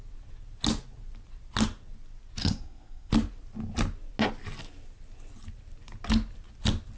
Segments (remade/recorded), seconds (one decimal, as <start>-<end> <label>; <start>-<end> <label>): 0.0-2.4 recorded; 2.4-3.1 remade; 3.1-7.0 recorded

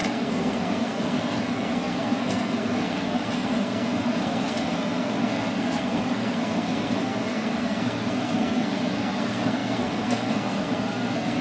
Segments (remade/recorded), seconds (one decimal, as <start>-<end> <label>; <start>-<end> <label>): 0.0-11.4 remade

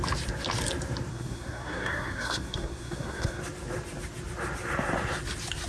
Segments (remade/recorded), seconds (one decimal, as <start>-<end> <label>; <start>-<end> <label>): 0.0-1.1 recorded; 1.1-3.4 remade; 3.4-5.7 recorded

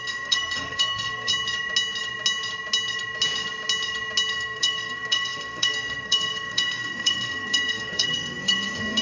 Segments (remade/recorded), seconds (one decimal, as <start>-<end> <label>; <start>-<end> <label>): 0.0-1.3 remade; 1.3-4.3 recorded; 4.3-9.0 remade

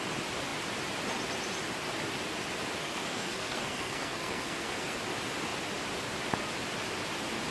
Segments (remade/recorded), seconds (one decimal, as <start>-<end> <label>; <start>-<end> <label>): 0.0-2.8 recorded; 2.8-5.0 remade; 5.0-7.5 recorded